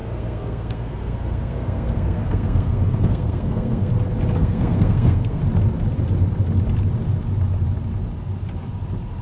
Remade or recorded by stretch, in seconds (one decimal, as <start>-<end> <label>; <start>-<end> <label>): 0.0-3.9 remade; 3.9-4.4 recorded; 4.4-5.4 remade; 5.4-9.2 recorded